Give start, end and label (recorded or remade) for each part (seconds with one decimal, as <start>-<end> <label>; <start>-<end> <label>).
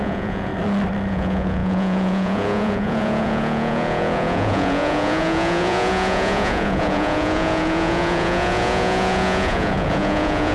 0.0-0.5 remade; 0.5-1.1 recorded; 1.1-10.5 remade